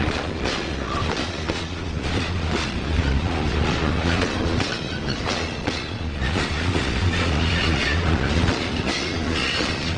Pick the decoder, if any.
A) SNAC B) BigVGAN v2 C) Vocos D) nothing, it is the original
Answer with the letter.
C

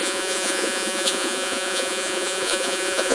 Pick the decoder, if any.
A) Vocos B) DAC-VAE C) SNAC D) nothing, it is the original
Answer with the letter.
A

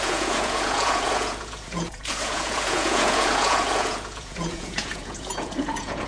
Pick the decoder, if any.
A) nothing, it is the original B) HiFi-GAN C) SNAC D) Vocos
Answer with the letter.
D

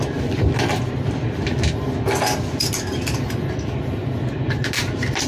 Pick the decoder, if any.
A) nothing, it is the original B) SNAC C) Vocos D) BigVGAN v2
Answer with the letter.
A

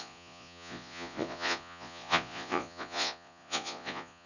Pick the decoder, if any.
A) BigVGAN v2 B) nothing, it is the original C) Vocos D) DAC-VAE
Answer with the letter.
C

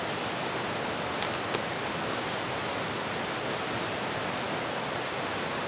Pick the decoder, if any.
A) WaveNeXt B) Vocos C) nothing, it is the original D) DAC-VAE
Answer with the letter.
C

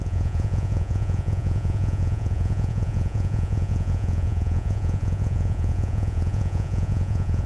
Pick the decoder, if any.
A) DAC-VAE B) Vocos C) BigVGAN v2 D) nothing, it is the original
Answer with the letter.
B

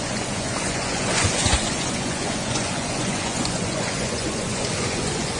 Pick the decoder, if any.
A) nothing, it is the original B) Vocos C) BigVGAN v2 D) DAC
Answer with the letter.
B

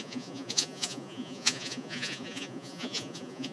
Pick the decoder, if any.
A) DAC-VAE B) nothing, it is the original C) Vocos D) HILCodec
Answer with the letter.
C